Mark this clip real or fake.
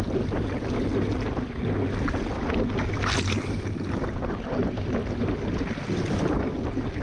real